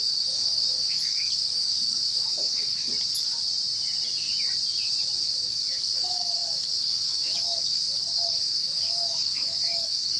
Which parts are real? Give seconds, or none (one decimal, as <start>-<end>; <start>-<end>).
2.8-5.2